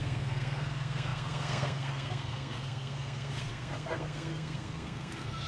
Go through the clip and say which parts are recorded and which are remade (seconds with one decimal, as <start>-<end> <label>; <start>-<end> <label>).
0.0-5.5 remade